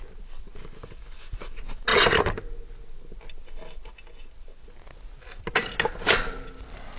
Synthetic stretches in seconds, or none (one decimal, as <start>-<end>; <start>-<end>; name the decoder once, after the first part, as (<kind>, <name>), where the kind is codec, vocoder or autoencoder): none